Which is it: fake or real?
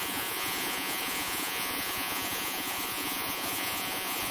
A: fake